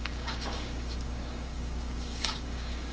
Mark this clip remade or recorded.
remade